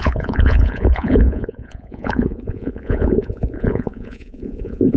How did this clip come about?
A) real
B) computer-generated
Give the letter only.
B